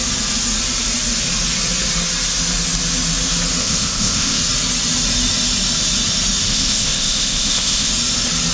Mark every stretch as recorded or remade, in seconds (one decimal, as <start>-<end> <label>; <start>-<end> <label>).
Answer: 0.0-3.6 recorded; 3.6-4.4 remade; 4.4-6.5 recorded; 6.5-7.9 remade; 7.9-8.5 recorded